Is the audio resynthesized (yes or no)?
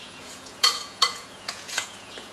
yes